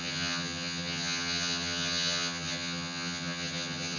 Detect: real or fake fake